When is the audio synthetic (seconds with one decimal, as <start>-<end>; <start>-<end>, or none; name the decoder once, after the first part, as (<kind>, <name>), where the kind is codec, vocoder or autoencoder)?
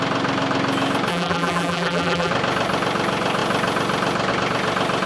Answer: 1.1-2.3 (vocoder, BigVGAN v2)